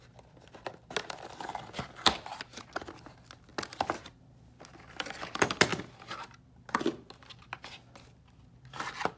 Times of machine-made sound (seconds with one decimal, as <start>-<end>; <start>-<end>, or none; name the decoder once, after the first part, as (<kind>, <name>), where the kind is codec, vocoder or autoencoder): none